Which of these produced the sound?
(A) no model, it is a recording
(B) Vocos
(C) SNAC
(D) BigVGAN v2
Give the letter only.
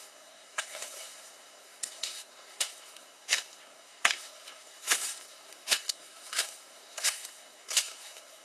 C